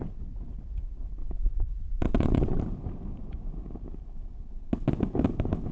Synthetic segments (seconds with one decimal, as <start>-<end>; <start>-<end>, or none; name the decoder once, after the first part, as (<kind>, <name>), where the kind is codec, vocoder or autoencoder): 1.2-2.6 (vocoder, WaveNeXt)